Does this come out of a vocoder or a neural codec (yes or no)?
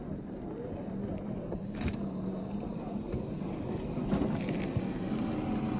no